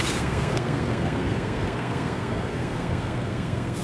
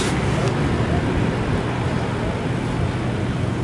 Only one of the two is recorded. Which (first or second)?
second